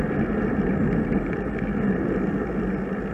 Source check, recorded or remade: recorded